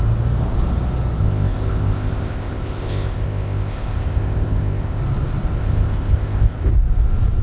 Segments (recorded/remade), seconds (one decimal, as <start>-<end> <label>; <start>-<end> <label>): 0.0-1.2 recorded; 1.2-5.0 remade; 5.0-5.6 recorded; 5.6-6.7 remade; 6.7-7.4 recorded